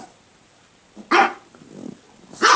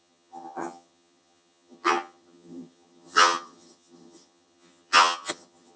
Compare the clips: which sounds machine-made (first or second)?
second